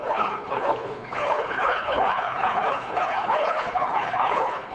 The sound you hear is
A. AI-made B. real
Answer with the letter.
A